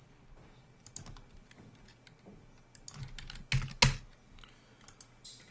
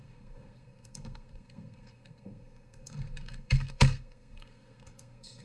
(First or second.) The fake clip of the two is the second